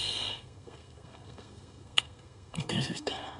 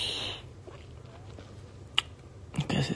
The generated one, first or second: first